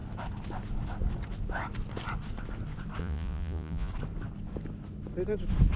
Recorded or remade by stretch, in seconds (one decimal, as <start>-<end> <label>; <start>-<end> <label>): 0.0-3.0 recorded; 3.0-3.9 remade; 3.9-5.8 recorded